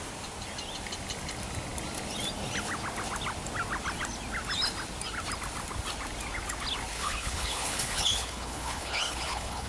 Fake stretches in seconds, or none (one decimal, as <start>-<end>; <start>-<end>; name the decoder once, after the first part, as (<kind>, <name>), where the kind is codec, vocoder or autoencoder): 6.9-9.7 (codec, HILCodec)